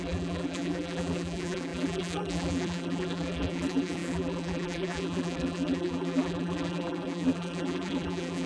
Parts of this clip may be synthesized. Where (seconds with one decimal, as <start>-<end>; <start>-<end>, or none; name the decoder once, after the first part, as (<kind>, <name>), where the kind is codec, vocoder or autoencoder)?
0.0-8.5 (vocoder, BigVGAN v2)